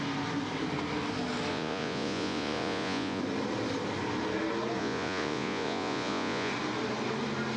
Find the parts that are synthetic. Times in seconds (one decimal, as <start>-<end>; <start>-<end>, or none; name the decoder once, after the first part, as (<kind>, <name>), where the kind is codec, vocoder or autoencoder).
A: 1.5-3.2 (vocoder, Vocos); 4.8-6.5